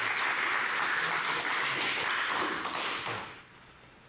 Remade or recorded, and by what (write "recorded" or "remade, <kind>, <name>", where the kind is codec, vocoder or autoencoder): recorded